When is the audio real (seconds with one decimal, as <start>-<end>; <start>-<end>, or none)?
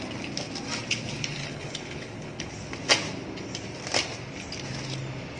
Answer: 0.0-1.4; 2.5-5.4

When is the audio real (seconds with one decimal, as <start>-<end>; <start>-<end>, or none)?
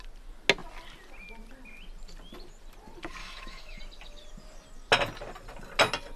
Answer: 0.0-3.2; 3.8-6.2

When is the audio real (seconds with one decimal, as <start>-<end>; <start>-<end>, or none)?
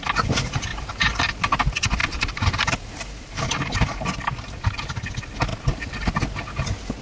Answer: 0.0-0.7; 1.3-2.0; 4.0-7.0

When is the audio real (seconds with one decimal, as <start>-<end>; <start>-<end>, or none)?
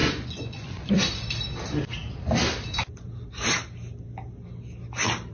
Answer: 0.9-5.3